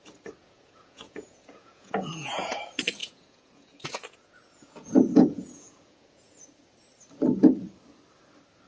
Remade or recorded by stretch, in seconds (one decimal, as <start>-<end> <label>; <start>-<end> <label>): 0.0-0.4 recorded; 0.4-2.6 remade; 2.6-3.0 recorded; 3.0-6.4 remade; 6.4-8.7 recorded